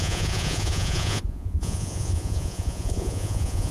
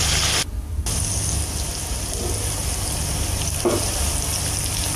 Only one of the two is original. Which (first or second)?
second